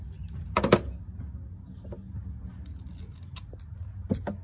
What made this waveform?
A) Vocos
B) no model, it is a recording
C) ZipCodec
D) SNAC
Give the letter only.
B